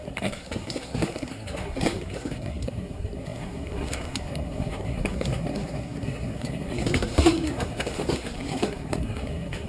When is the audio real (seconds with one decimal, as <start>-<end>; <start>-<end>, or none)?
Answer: none